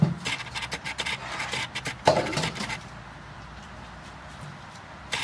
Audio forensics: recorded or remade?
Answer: remade